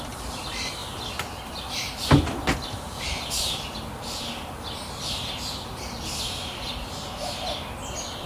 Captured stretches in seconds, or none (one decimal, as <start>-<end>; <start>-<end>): 0.0-8.3